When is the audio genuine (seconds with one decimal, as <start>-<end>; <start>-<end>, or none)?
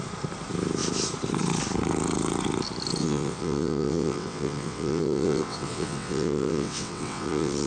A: 0.0-3.0